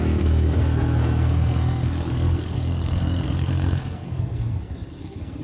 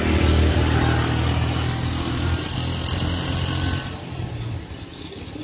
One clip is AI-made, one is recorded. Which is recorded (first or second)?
second